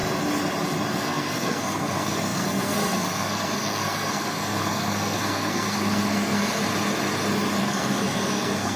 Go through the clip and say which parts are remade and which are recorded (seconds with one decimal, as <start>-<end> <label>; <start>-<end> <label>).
0.0-0.9 recorded; 0.9-6.6 remade; 6.6-7.6 recorded; 7.6-8.8 remade